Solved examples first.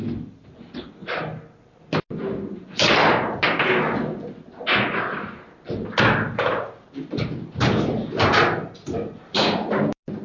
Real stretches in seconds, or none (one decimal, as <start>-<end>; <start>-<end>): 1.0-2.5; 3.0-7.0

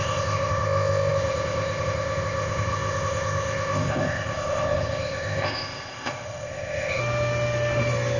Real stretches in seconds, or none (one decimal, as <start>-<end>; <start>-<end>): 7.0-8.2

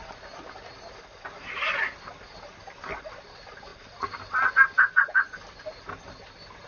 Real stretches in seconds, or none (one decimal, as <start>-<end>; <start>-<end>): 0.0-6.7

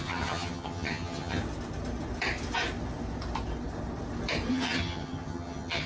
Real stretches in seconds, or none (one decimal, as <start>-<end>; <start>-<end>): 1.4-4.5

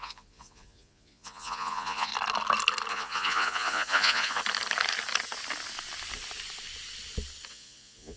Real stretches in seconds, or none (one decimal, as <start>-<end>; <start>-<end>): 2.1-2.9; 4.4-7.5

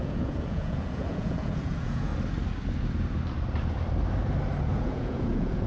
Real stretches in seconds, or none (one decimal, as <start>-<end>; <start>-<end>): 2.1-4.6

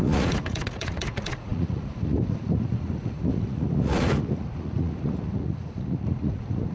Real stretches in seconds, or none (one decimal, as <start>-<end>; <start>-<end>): none

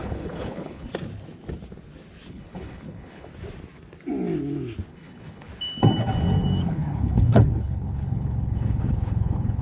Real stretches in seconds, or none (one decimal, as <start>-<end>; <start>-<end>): 0.9-2.3; 3.3-4.9; 5.5-6.7